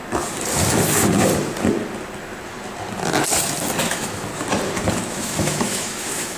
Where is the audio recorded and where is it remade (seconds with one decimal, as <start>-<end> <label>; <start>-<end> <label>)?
0.0-3.8 recorded; 3.8-4.3 remade; 4.3-4.9 recorded; 4.9-6.4 remade